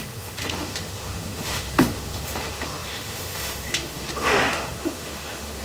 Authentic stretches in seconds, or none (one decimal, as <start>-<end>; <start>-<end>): none